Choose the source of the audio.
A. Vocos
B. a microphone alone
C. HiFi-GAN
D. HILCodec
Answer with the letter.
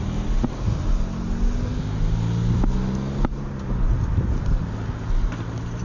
B